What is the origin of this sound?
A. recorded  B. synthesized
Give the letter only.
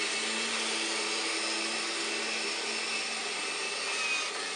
A